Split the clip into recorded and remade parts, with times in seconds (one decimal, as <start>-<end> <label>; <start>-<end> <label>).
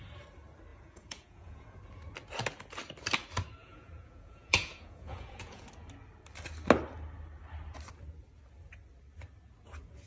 0.0-0.7 recorded; 0.7-1.8 remade; 1.8-3.6 recorded; 3.6-5.6 remade; 5.6-10.1 recorded